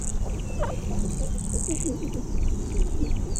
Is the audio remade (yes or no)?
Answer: no